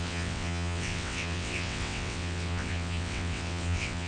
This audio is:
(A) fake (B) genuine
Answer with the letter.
A